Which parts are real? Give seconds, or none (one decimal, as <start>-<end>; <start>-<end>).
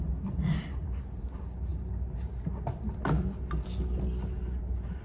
0.0-5.0